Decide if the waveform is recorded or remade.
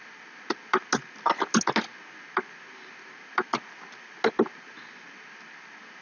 recorded